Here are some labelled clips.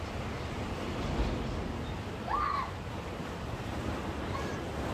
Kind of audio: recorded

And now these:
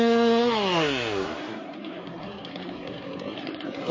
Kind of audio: remade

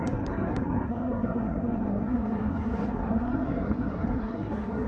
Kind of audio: remade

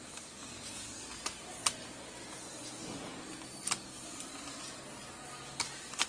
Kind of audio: recorded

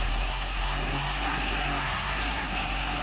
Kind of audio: remade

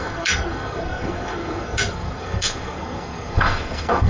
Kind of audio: remade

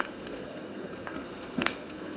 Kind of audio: remade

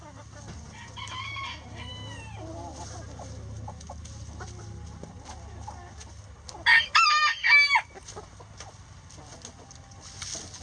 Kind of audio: recorded